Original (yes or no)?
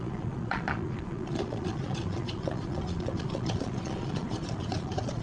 no